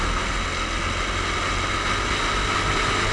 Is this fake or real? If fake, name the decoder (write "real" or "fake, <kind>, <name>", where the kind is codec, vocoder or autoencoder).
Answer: real